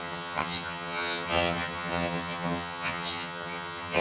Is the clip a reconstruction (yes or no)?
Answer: yes